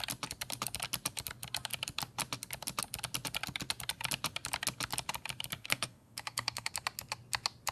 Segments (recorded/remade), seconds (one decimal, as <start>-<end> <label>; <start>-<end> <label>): 0.0-5.6 recorded; 5.6-6.7 remade; 6.7-7.7 recorded